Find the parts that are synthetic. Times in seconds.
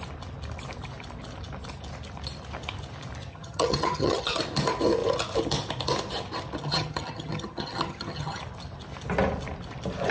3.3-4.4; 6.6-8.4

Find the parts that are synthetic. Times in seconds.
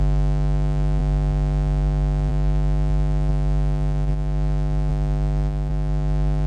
0.0-1.0; 2.3-6.5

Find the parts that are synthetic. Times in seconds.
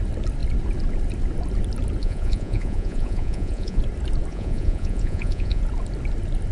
2.0-3.8; 4.3-5.6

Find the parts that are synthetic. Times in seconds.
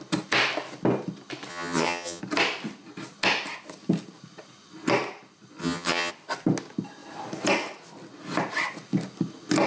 1.5-2.2; 5.6-6.1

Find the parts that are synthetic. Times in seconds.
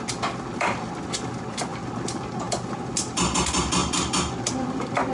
none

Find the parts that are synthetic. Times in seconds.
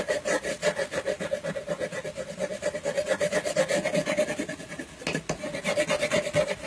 none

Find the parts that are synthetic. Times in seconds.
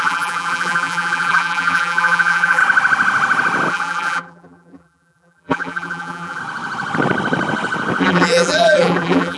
0.0-2.6; 3.7-6.4; 8.0-9.4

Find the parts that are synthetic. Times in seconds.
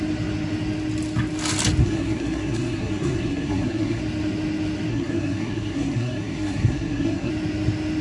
1.8-4.0; 4.9-7.3